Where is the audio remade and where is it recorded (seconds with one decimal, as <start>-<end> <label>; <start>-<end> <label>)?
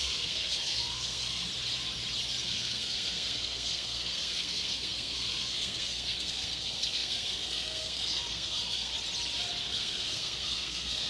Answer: 0.0-1.5 remade; 1.5-2.4 recorded; 2.4-8.9 remade; 8.9-9.6 recorded; 9.6-11.1 remade